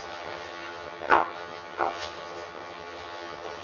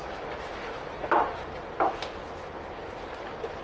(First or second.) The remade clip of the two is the first